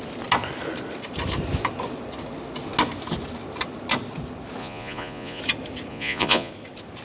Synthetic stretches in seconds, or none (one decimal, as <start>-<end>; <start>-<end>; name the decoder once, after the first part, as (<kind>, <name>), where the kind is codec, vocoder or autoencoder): 4.6-5.4 (vocoder, Vocos); 5.9-6.5